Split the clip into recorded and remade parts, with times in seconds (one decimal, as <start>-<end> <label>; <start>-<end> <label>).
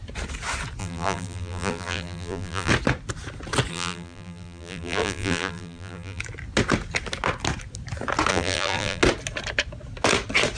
0.0-0.8 recorded; 0.8-2.7 remade; 2.7-3.7 recorded; 3.7-6.2 remade; 6.2-8.3 recorded; 8.3-9.0 remade; 9.0-10.6 recorded